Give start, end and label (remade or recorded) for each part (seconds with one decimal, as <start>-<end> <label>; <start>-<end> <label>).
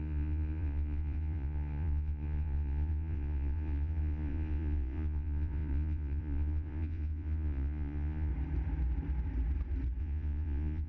0.0-8.3 remade; 8.3-10.0 recorded; 10.0-10.9 remade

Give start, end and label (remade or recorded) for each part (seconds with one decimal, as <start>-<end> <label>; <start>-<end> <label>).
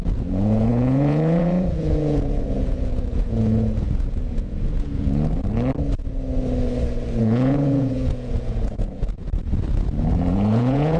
0.0-5.4 remade; 5.4-7.2 recorded; 7.2-9.2 remade; 9.2-10.0 recorded; 10.0-11.0 remade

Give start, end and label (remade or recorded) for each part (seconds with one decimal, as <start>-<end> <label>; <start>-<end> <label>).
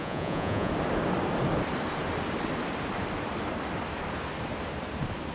0.0-0.7 remade; 0.7-5.3 recorded